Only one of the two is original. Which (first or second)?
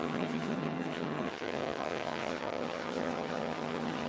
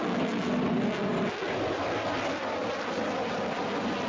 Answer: second